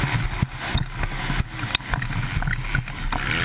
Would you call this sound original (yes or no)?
yes